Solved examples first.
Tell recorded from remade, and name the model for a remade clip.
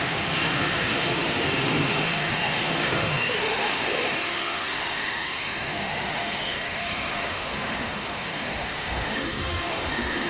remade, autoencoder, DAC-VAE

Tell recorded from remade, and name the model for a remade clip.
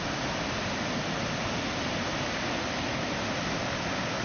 recorded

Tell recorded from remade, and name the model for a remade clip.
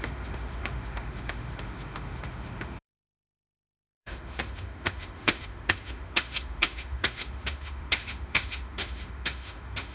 remade, autoencoder, DAC-VAE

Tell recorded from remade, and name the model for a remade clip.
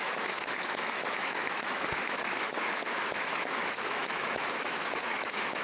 remade, autoencoder, DAC-VAE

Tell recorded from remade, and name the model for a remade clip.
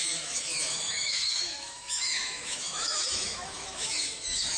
remade, autoencoder, DAC-VAE